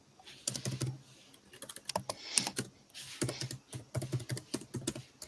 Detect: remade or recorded recorded